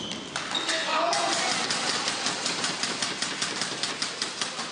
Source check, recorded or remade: recorded